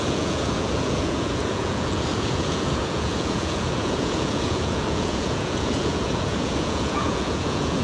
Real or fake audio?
fake